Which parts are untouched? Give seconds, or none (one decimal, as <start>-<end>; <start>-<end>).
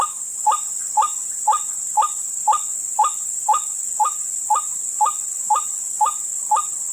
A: 0.0-6.9